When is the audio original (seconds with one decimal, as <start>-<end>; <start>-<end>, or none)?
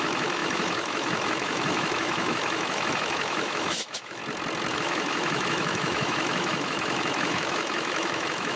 4.2-4.7